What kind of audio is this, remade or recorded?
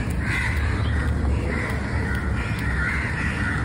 recorded